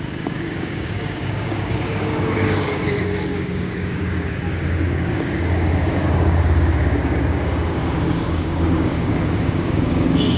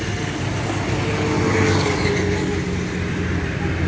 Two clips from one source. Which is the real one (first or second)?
second